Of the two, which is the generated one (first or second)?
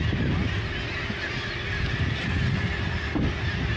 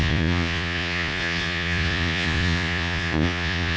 second